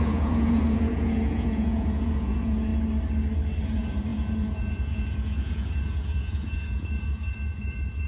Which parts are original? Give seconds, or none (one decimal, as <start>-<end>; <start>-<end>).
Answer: 2.7-3.6